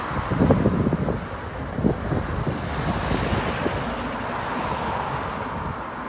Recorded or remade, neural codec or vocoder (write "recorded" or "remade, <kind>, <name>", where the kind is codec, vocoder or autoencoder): recorded